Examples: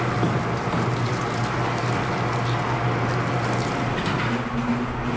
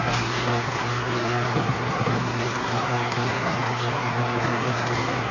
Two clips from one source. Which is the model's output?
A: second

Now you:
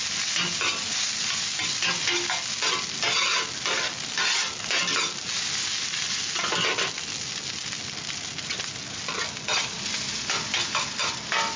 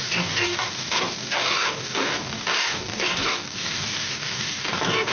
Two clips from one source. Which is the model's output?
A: second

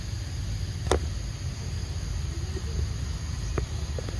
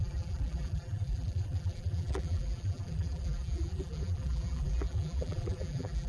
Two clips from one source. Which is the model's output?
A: second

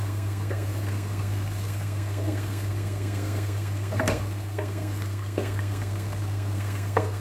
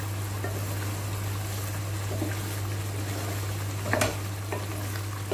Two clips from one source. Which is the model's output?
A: first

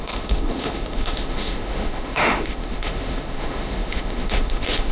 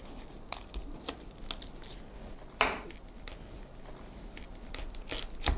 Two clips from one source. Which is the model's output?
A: first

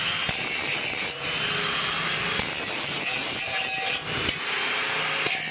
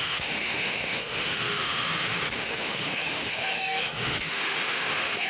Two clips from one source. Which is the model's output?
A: second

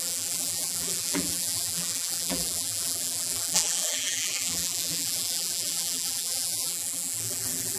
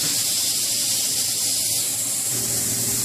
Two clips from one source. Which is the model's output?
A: first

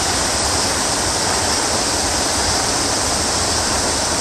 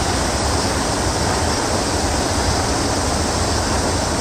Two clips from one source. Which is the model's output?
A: first